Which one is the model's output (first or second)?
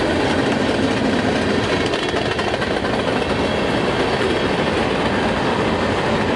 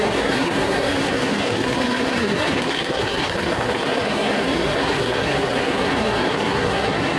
second